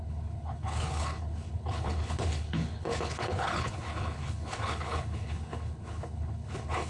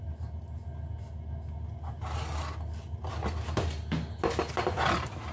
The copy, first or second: first